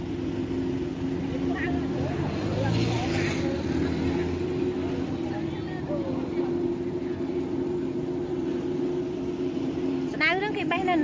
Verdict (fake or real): real